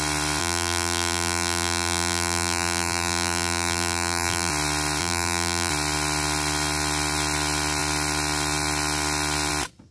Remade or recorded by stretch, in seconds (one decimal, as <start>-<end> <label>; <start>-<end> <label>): 0.0-0.4 recorded; 0.4-4.5 remade; 4.5-5.0 recorded; 5.0-5.7 remade; 5.7-9.9 recorded